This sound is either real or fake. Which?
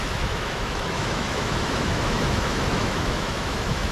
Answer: fake